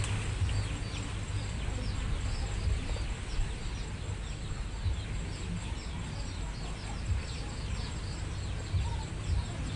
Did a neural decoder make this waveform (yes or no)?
no